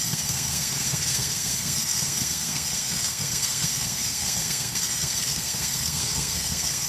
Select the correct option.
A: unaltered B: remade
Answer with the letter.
B